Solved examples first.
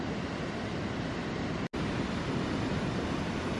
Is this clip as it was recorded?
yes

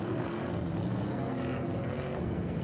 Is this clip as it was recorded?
no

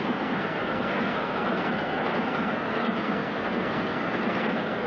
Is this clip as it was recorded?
no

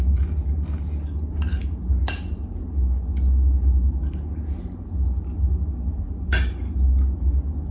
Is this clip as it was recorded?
yes